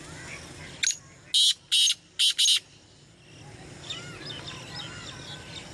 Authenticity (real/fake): real